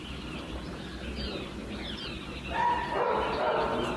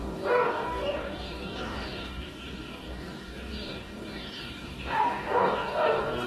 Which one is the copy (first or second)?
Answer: second